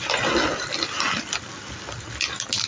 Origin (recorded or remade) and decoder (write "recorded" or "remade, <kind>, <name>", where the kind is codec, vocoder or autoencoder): recorded